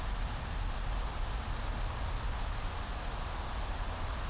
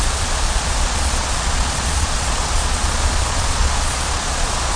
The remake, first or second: second